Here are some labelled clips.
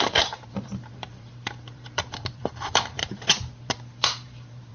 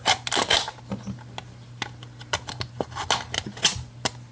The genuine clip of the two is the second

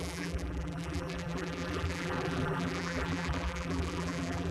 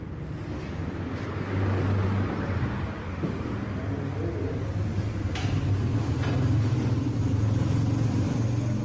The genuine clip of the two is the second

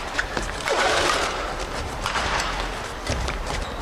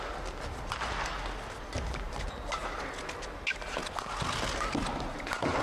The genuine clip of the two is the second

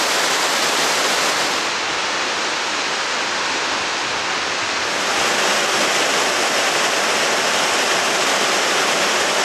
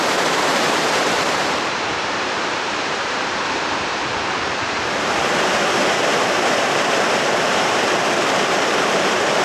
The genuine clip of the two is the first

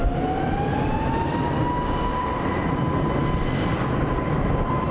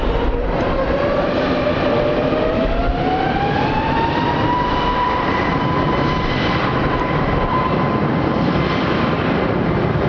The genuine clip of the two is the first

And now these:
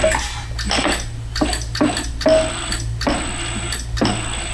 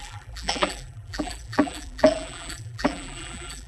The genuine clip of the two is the first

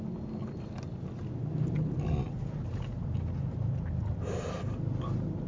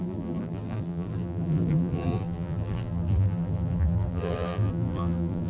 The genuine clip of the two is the first